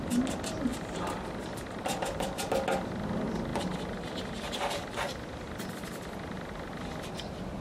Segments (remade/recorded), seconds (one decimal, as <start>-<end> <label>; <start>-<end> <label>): 0.0-0.7 recorded; 0.7-2.5 remade; 2.5-7.6 recorded